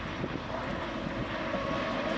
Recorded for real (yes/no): yes